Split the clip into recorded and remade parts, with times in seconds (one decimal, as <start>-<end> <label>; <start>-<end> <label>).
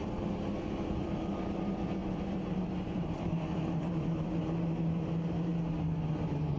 0.0-5.5 remade; 5.5-6.1 recorded; 6.1-6.6 remade